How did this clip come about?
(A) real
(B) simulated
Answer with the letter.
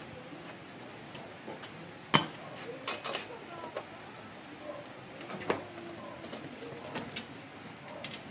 A